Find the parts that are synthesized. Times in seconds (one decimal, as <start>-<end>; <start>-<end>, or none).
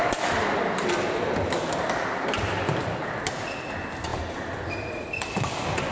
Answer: none